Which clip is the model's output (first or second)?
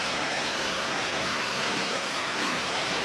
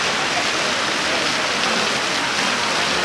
first